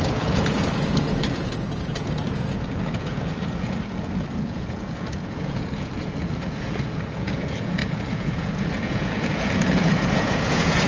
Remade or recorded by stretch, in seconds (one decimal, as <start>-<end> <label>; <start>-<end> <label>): 0.0-10.9 remade